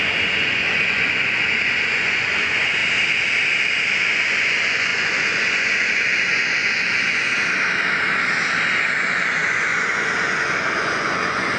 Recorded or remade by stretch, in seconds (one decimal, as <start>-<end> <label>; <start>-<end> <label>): 0.0-2.8 remade; 2.8-4.1 recorded; 4.1-7.3 remade; 7.3-8.8 recorded; 8.8-11.6 remade